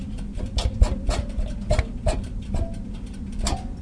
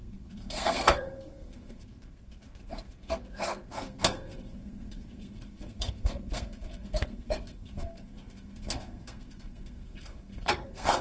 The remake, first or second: second